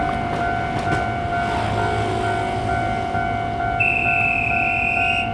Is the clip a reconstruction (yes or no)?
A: no